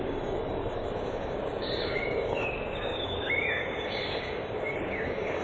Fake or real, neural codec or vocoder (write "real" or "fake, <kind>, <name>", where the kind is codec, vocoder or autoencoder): fake, codec, DAC